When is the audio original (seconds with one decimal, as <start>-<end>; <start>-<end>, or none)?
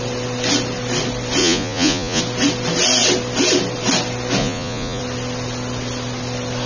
0.0-1.4; 2.2-4.4; 5.0-6.7